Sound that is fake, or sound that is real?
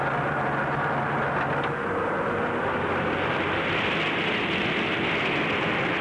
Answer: real